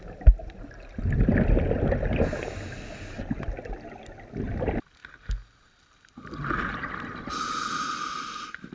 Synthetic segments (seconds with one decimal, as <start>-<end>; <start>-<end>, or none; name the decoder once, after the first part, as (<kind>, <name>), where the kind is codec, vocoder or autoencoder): none